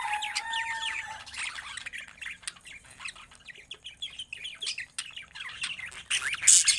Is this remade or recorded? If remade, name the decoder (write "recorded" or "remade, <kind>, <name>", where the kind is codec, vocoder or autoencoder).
recorded